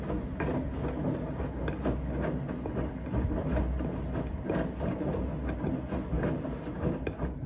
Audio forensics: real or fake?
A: real